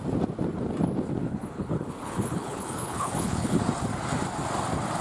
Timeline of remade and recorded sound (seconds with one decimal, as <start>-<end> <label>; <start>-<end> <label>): 0.0-1.2 recorded; 1.2-3.6 remade; 3.6-5.0 recorded